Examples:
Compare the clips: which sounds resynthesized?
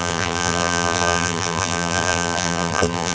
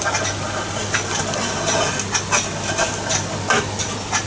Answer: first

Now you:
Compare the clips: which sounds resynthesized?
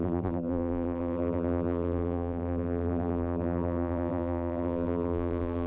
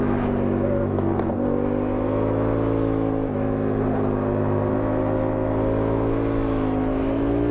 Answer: first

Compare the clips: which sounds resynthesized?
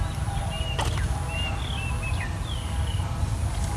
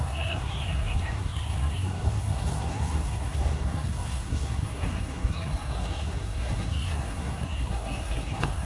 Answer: second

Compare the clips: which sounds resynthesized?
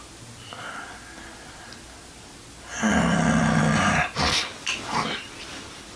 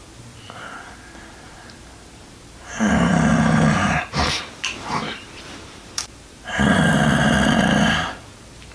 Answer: second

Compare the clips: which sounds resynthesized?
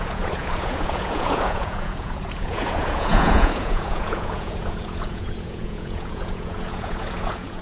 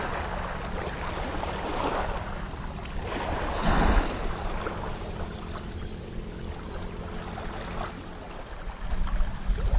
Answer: first